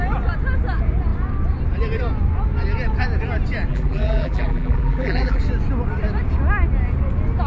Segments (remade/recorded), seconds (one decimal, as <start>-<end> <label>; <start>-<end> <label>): 0.0-3.7 recorded; 3.7-5.4 remade; 5.4-7.5 recorded